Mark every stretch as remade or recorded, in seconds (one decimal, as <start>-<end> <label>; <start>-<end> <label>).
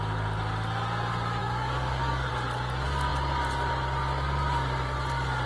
0.0-1.4 recorded; 1.4-2.3 remade; 2.3-5.5 recorded